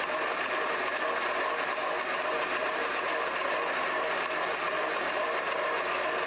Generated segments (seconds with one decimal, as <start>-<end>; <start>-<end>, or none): none